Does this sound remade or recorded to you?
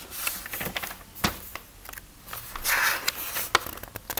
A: recorded